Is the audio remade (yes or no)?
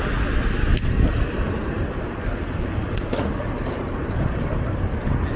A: no